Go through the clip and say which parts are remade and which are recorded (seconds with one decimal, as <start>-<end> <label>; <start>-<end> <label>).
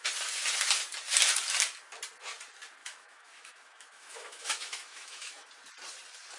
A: 0.0-2.8 recorded; 2.8-5.5 remade; 5.5-6.4 recorded